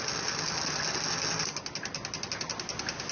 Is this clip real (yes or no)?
yes